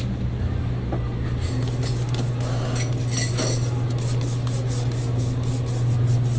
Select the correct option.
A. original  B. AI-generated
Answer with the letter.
A